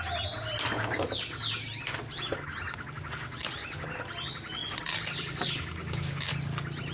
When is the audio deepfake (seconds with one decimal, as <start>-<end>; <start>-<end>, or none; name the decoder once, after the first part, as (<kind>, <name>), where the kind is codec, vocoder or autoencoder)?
5.8-6.3 (codec, DAC)